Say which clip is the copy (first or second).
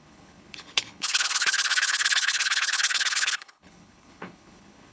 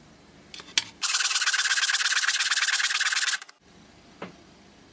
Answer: first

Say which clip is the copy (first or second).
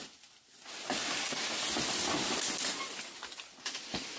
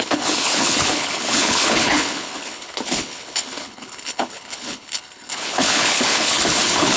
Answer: second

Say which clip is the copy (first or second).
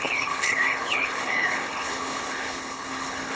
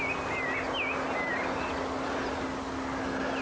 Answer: first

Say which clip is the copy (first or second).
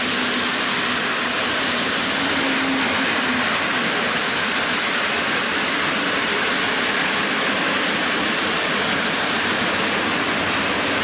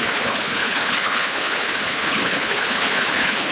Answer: second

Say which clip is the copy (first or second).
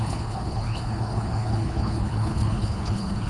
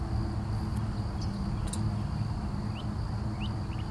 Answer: first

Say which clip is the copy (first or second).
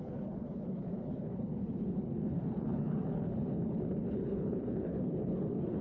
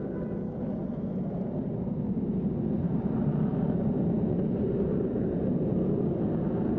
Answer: first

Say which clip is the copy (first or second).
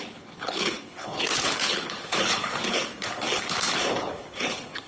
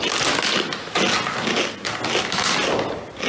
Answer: first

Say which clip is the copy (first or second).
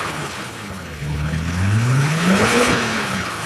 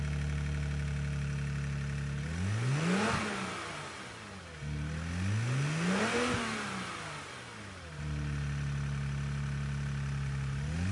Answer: first